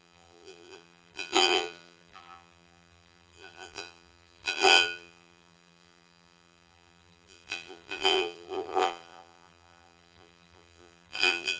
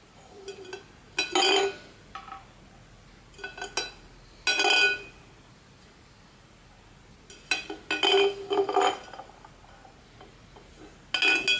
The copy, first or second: first